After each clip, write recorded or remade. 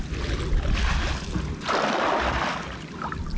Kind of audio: recorded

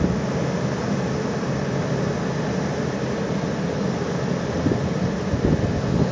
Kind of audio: recorded